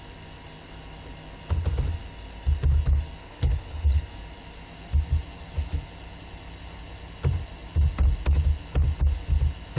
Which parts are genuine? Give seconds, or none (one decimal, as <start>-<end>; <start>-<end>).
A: 0.0-3.2; 4.0-9.8